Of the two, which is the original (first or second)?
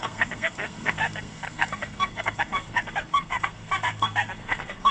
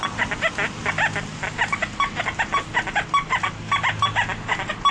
second